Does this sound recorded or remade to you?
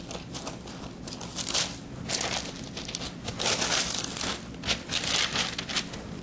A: recorded